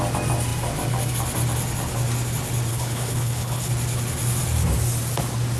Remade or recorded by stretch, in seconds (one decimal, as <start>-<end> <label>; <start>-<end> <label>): 0.0-2.7 recorded; 2.7-3.7 remade; 3.7-5.6 recorded